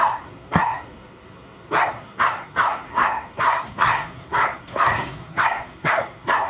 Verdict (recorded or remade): remade